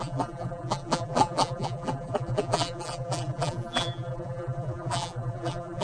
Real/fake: fake